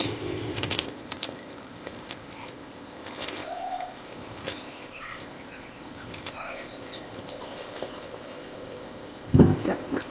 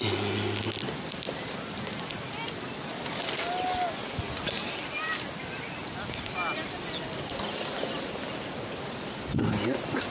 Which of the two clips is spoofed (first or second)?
first